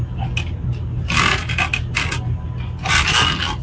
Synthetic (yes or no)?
no